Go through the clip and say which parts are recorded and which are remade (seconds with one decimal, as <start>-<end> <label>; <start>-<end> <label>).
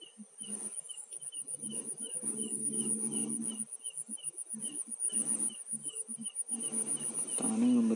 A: 0.0-8.0 recorded